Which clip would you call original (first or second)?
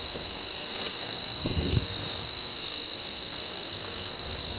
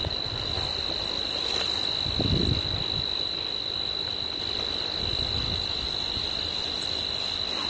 second